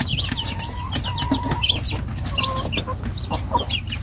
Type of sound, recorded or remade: recorded